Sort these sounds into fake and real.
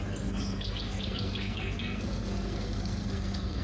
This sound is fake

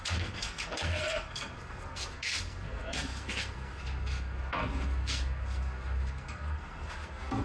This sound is fake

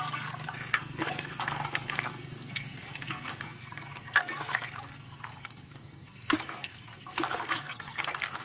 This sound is fake